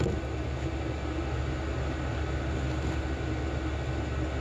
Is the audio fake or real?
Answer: real